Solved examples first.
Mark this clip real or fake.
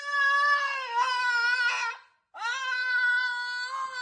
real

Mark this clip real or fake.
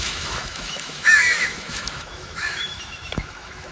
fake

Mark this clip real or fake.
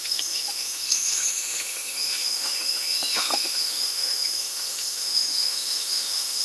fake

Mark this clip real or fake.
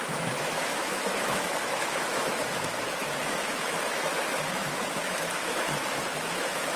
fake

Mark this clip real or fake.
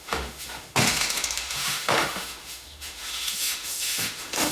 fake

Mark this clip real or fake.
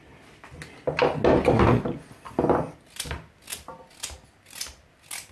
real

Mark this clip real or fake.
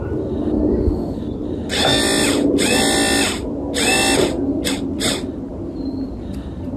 real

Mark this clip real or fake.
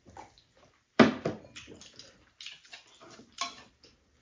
real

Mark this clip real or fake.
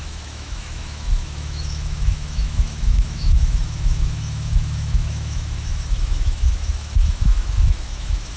fake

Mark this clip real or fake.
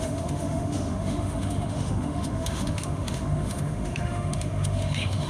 fake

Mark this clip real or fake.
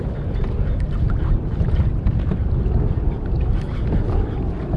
real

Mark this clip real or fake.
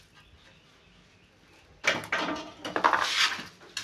real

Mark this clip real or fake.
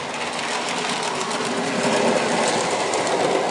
real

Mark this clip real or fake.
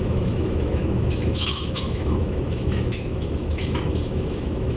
fake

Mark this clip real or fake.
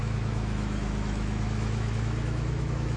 fake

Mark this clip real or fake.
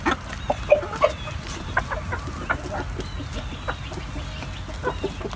real